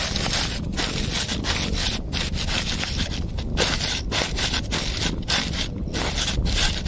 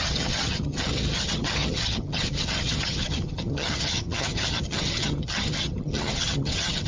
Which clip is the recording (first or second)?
first